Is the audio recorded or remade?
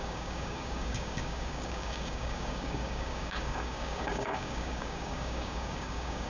remade